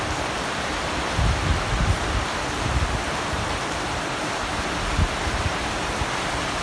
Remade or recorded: recorded